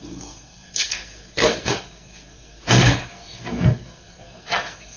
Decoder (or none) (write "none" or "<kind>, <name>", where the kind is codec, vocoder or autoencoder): codec, SNAC